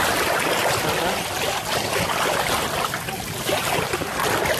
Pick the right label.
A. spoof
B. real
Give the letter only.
B